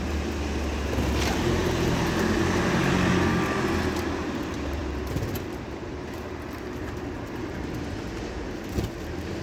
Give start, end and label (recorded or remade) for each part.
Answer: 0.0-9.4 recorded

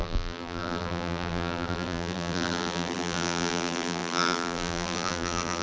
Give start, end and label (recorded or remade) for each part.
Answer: 0.0-5.6 remade

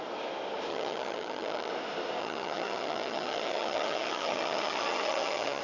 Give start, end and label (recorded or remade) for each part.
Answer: 0.0-0.7 recorded; 0.7-1.7 remade; 1.7-2.2 recorded; 2.2-5.6 remade

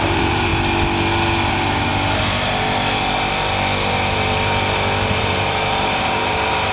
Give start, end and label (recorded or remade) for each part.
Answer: 0.0-0.5 remade; 0.5-1.5 recorded; 1.5-1.9 remade; 1.9-5.2 recorded; 5.2-6.7 remade